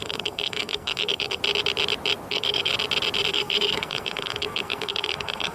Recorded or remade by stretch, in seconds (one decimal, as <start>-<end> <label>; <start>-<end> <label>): 0.0-1.4 remade; 1.4-2.3 recorded; 2.3-2.7 remade; 2.7-3.3 recorded; 3.3-5.5 remade

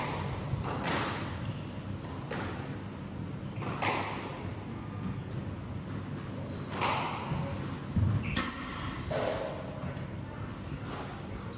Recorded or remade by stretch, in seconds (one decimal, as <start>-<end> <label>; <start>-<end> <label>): 0.0-4.7 recorded; 4.7-5.3 remade; 5.3-11.6 recorded

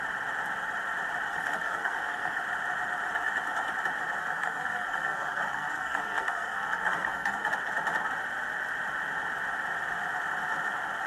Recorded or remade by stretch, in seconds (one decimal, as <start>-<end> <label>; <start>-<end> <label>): 0.0-1.3 recorded; 1.3-2.4 remade; 2.4-4.2 recorded; 4.2-7.5 remade; 7.5-11.1 recorded